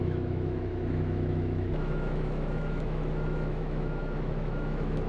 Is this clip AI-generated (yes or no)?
yes